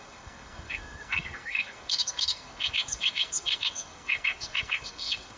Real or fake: fake